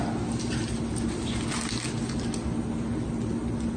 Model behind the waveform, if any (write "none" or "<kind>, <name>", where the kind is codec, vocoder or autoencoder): none